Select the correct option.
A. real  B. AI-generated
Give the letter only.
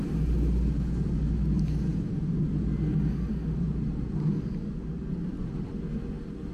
A